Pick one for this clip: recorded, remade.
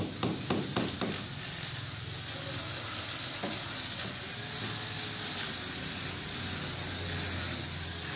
recorded